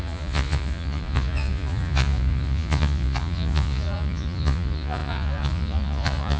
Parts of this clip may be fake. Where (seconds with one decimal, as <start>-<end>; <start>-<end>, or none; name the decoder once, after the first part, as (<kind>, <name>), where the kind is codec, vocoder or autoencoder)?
0.0-6.4 (vocoder, Vocos)